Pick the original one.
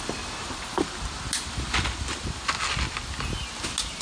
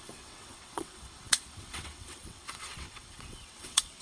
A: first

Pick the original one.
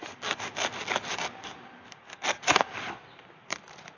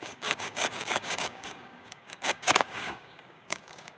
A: first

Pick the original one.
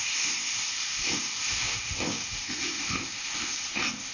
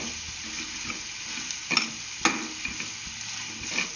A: second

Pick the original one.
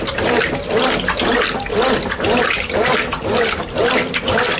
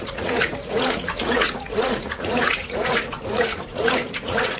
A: first